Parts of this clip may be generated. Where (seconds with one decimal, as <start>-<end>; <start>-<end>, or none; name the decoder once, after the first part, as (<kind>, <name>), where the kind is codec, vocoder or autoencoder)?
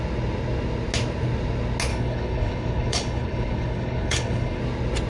1.9-4.6 (codec, HILCodec)